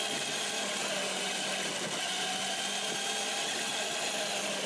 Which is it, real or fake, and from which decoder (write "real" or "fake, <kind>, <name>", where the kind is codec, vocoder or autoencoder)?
real